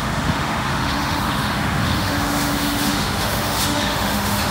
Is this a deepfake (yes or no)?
yes